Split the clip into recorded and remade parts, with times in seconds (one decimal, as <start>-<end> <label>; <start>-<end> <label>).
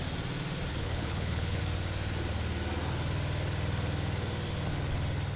0.0-0.7 recorded; 0.7-1.6 remade; 1.6-5.4 recorded